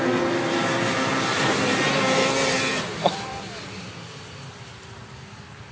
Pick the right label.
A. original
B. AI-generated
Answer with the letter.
A